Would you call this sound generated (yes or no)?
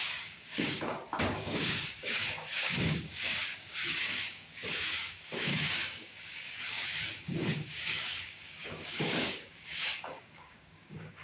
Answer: yes